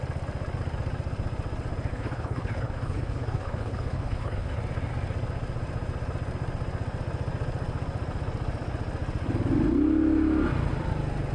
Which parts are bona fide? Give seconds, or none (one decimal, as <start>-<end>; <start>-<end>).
0.0-1.9; 4.6-11.3